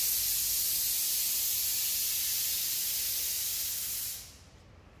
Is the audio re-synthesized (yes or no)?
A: no